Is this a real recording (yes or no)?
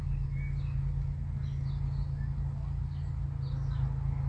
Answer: yes